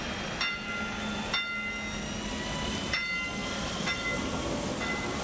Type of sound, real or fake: real